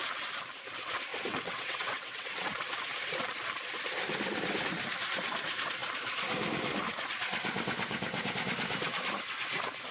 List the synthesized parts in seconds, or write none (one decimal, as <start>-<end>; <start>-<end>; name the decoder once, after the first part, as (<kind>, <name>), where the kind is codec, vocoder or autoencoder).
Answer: 1.1-2.5 (vocoder, WaveNeXt)